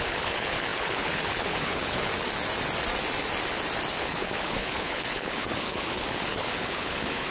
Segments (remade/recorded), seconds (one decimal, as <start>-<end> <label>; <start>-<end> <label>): 0.0-2.1 remade; 2.1-4.0 recorded; 4.0-7.3 remade